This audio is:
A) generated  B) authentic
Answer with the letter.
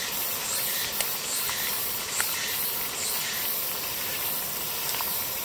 B